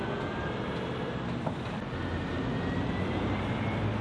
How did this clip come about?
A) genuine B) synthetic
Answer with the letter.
A